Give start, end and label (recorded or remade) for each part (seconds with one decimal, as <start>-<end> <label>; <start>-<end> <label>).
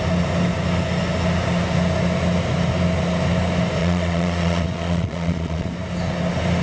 0.0-3.8 recorded; 3.8-5.7 remade; 5.7-6.6 recorded